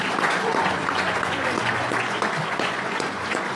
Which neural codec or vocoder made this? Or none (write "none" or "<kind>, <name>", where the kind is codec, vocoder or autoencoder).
vocoder, Vocos